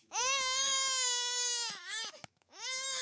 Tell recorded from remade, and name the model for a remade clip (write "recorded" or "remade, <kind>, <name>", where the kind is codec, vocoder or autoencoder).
remade, autoencoder, DAC-VAE